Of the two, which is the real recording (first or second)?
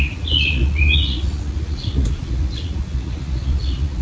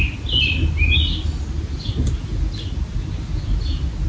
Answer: second